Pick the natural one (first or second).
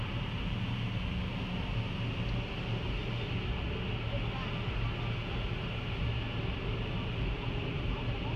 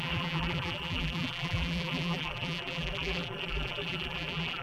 first